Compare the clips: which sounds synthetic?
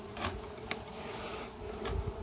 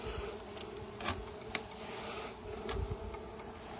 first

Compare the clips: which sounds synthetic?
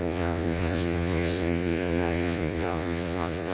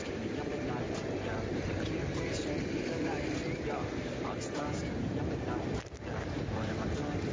first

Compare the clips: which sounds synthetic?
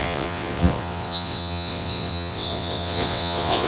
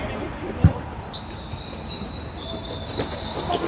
first